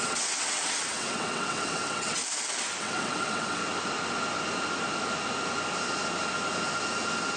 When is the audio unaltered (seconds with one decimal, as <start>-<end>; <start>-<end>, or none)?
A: 2.2-2.8; 3.6-7.4